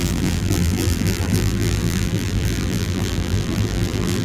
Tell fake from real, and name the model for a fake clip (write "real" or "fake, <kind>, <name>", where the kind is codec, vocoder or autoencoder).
fake, vocoder, BigVGAN v2